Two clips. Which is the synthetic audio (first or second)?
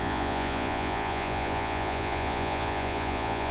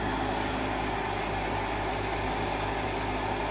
first